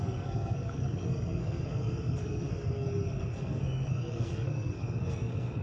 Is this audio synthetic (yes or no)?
yes